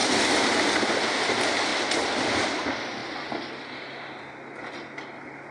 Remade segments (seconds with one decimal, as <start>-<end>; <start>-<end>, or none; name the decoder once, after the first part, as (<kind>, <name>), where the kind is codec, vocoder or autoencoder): none